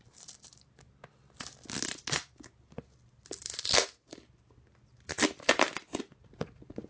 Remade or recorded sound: recorded